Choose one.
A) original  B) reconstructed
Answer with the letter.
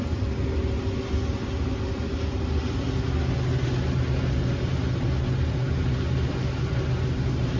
A